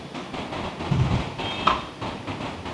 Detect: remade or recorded recorded